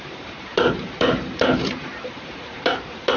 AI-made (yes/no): yes